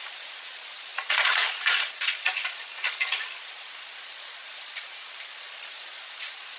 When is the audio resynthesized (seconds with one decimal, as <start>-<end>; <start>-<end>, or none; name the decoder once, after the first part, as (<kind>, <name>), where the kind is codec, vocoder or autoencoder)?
0.0-6.6 (vocoder, Vocos)